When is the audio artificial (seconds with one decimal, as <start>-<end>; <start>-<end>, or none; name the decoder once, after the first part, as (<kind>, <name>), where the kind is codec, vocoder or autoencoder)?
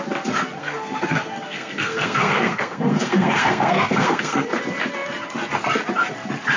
0.6-4.6 (codec, SNAC)